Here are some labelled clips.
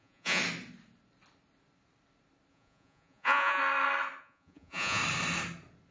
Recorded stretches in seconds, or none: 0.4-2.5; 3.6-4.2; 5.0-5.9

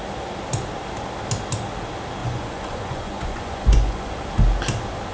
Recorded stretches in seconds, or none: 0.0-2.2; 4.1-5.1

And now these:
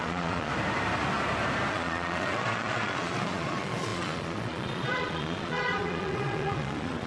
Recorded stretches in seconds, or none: 0.5-1.7

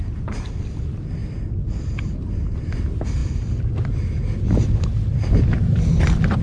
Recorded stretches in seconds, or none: 0.0-6.4

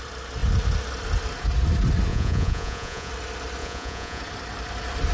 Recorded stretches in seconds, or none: 0.0-2.1; 3.1-3.6; 4.2-5.1

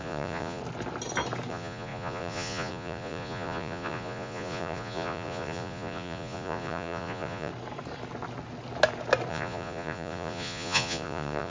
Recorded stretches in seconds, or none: 0.6-1.5; 7.5-9.3